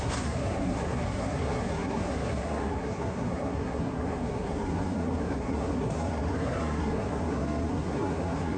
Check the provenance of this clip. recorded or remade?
remade